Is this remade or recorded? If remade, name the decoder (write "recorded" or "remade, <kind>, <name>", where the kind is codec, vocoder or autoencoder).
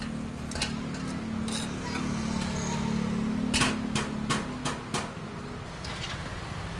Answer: recorded